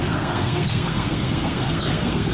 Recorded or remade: remade